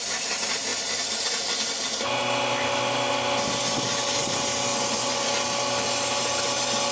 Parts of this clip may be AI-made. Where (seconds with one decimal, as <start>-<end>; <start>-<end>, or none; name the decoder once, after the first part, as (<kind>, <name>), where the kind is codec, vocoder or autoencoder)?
4.7-5.3 (vocoder, Vocos)